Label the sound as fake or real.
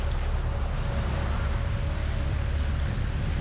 real